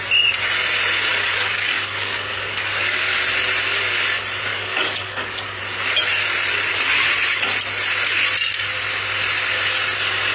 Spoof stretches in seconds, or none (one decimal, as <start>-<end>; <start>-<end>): 1.1-3.2; 4.5-5.6